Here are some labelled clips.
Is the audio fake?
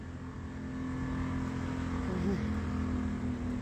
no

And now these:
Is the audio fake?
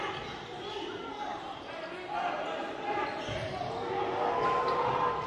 no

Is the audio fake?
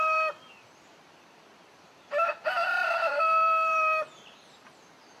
yes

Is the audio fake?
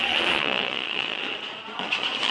yes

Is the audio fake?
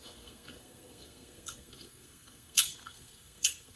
yes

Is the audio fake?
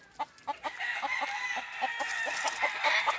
no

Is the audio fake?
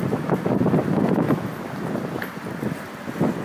no